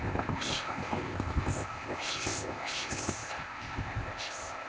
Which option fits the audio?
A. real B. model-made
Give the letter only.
B